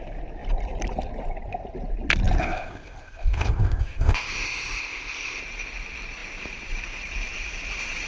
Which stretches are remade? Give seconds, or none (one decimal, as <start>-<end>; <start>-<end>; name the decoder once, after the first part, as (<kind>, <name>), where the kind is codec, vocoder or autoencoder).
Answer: 2.4-5.4 (codec, ZipCodec)